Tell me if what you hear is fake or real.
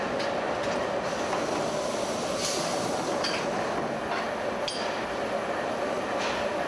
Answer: real